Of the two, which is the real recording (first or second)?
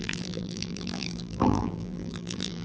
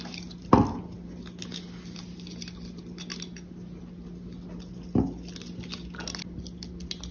second